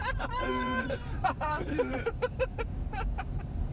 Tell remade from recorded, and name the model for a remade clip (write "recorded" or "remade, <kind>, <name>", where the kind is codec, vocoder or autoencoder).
remade, vocoder, BigVGAN v2